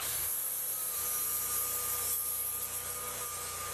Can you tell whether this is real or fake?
real